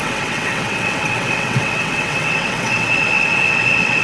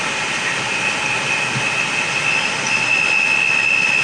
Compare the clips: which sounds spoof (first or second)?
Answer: first